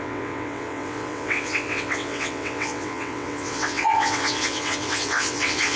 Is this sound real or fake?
fake